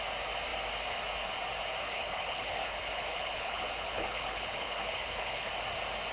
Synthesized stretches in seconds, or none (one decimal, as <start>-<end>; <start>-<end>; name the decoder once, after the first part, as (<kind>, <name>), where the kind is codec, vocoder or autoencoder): 1.8-5.5 (codec, HILCodec)